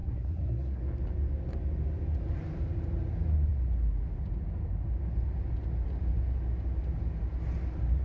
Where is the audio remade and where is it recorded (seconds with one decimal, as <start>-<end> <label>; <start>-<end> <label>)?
0.0-0.8 remade; 0.8-8.0 recorded